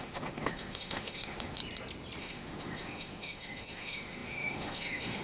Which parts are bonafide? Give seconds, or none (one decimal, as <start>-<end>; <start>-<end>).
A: 1.6-2.2